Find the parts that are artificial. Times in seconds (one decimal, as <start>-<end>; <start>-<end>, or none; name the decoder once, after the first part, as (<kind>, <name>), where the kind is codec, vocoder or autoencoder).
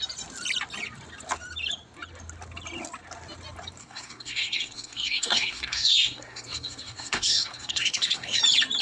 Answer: 3.8-8.4 (codec, SNAC)